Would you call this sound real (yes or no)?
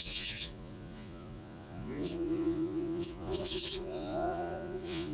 no